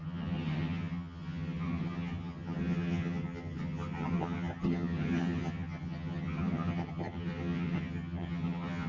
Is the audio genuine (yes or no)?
no